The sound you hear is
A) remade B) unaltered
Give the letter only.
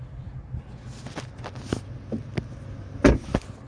B